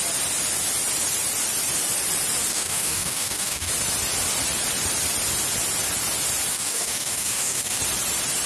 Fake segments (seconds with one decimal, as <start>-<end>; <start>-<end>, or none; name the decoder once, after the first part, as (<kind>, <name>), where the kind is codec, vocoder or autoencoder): 2.5-3.7 (codec, DAC); 6.5-7.8